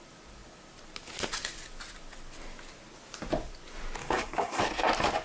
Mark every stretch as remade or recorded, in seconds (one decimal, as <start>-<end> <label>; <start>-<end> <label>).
0.0-4.0 recorded; 4.0-4.6 remade; 4.6-5.2 recorded

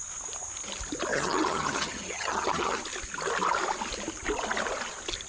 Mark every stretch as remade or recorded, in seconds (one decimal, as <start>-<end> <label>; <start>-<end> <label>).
0.0-1.1 recorded; 1.1-2.8 remade; 2.8-5.3 recorded

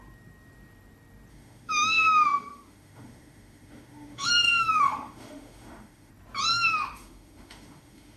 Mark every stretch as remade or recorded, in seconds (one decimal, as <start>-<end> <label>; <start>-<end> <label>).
0.0-1.3 recorded; 1.3-6.1 remade; 6.1-6.5 recorded; 6.5-8.2 remade

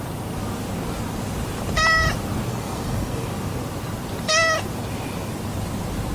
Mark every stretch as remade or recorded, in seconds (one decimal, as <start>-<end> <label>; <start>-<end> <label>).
0.0-2.5 recorded; 2.5-3.3 remade; 3.3-6.1 recorded

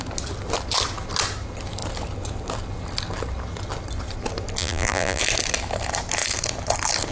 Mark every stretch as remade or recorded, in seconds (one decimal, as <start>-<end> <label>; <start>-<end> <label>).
0.0-4.6 recorded; 4.6-5.2 remade; 5.2-7.1 recorded